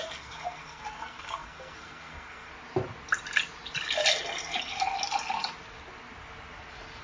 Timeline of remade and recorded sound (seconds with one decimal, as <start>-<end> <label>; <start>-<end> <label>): 0.0-2.5 remade; 2.5-7.0 recorded